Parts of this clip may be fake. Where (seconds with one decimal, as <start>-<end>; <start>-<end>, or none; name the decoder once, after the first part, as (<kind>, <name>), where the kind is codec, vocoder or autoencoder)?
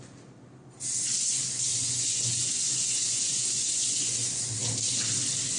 1.7-4.4 (vocoder, Vocos)